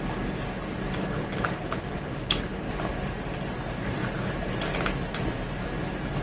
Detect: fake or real real